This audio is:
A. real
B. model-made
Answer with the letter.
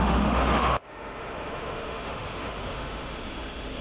B